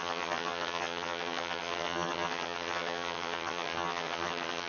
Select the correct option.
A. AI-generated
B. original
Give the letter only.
A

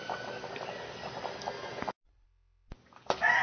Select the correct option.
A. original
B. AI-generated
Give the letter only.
A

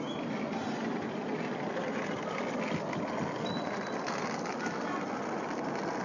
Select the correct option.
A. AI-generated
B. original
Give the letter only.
B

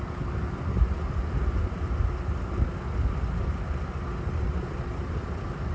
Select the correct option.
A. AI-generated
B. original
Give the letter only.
B